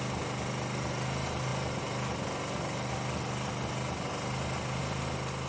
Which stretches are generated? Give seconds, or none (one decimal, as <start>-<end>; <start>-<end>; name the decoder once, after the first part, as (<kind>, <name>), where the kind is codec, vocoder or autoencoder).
none